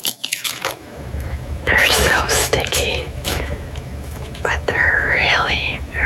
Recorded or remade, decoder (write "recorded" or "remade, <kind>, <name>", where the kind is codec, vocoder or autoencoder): remade, autoencoder, DAC-VAE